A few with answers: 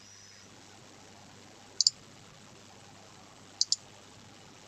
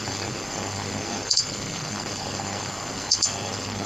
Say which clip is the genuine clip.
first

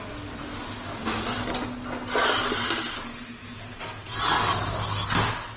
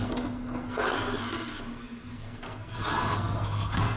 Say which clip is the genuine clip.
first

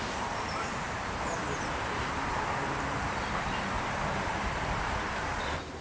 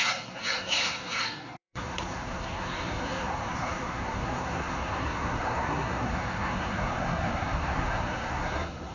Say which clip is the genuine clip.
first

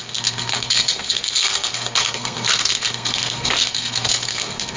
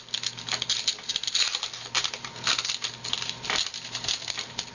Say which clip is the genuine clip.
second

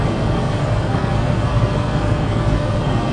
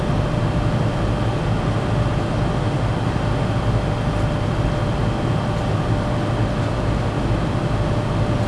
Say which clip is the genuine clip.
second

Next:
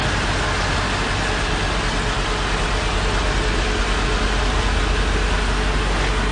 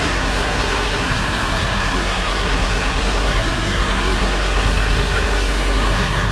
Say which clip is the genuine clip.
first